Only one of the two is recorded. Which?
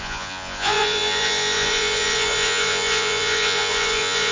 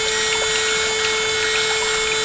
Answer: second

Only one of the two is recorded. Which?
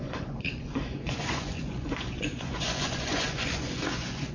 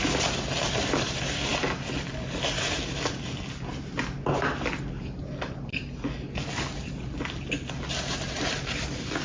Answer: second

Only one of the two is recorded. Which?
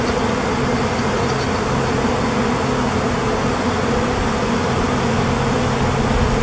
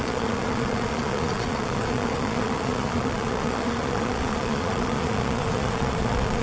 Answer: first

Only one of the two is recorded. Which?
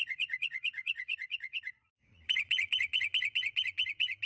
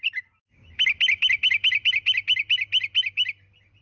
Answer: second